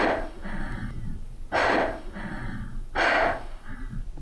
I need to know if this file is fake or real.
real